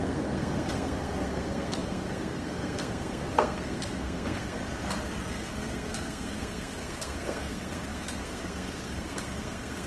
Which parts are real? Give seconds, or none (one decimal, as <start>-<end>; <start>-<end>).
4.6-5.3